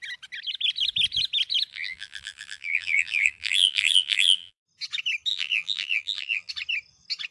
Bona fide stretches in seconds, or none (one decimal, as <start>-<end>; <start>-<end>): 0.0-1.7; 4.6-5.3; 6.5-7.3